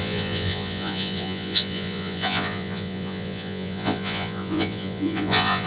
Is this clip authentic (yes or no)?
no